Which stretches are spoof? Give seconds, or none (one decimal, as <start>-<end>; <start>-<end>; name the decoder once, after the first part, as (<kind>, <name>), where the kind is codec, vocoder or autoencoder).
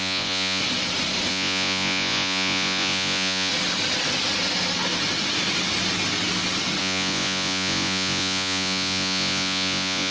0.0-0.6 (vocoder, Vocos); 1.3-3.5; 6.8-10.1